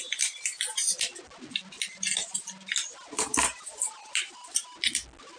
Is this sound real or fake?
real